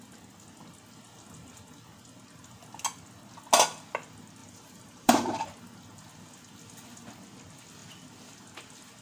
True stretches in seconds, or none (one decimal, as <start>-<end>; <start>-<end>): 0.0-4.4; 5.4-9.0